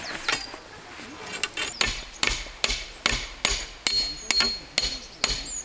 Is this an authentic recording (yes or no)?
yes